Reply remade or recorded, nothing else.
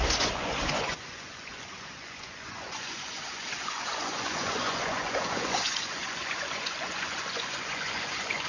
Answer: remade